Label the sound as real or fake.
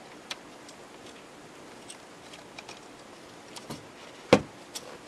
real